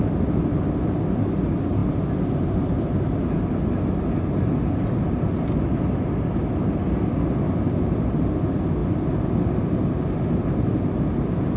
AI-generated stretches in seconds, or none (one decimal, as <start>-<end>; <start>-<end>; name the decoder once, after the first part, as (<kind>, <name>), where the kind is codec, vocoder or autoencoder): none